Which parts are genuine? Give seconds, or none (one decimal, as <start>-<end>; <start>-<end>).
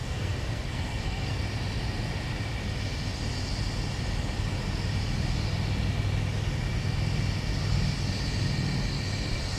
1.4-9.6